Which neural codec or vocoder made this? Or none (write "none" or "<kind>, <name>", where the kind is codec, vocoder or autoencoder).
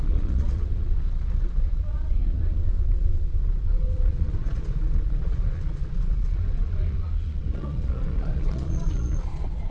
vocoder, Vocos